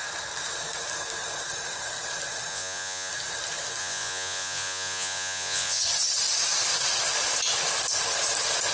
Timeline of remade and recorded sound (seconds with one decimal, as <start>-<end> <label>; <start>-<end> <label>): 0.0-2.5 recorded; 2.5-3.1 remade; 3.1-3.8 recorded; 3.8-5.8 remade; 5.8-8.7 recorded

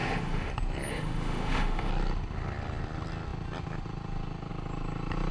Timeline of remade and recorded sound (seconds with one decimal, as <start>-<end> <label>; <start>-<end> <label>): 0.0-0.5 remade; 0.5-0.9 recorded; 0.9-1.9 remade; 1.9-5.3 recorded

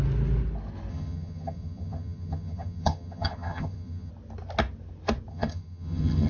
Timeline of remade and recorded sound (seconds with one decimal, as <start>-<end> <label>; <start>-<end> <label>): 0.0-0.9 recorded; 0.9-4.1 remade; 4.1-5.3 recorded; 5.3-6.3 remade

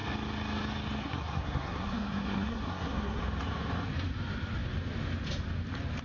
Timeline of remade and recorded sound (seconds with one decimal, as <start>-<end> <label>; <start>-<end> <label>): 0.0-1.0 recorded; 1.0-3.2 remade; 3.2-6.0 recorded

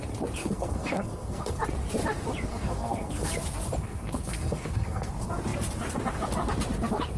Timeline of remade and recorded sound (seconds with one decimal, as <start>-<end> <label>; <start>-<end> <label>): 0.0-0.4 recorded; 0.4-1.6 remade; 1.6-2.5 recorded; 2.5-3.3 remade; 3.3-3.8 recorded; 3.8-5.1 remade; 5.1-7.2 recorded

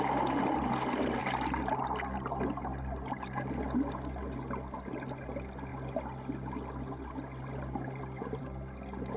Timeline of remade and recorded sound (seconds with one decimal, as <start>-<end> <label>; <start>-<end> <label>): 0.0-9.2 recorded

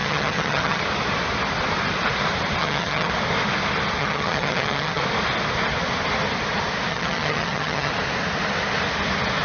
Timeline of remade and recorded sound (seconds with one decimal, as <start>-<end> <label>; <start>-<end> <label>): 0.0-0.8 remade; 0.8-2.6 recorded; 2.6-3.1 remade; 3.1-4.0 recorded; 4.0-5.0 remade; 5.0-6.9 recorded; 6.9-7.9 remade; 7.9-9.4 recorded

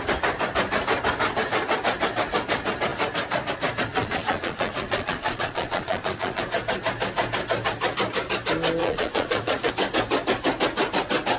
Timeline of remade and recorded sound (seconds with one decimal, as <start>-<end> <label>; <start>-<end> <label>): 0.0-3.9 recorded; 3.9-6.4 remade; 6.4-8.8 recorded; 8.8-9.7 remade; 9.7-11.4 recorded